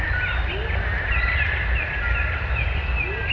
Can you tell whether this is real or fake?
real